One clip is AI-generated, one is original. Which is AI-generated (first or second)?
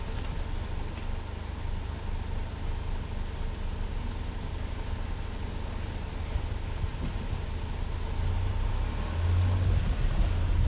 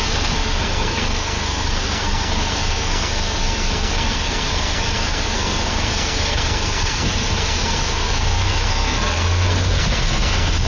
second